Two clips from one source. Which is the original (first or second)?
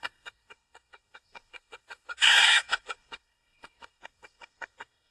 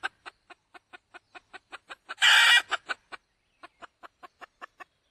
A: second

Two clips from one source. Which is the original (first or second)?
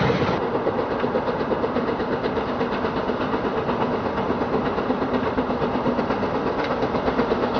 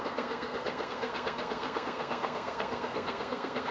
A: first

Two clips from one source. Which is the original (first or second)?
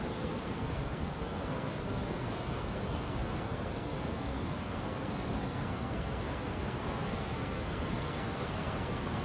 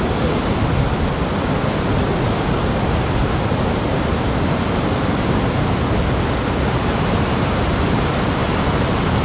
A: second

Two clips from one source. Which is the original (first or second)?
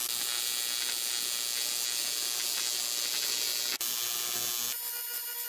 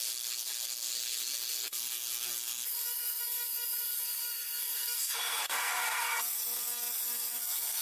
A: first